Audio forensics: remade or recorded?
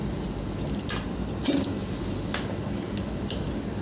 recorded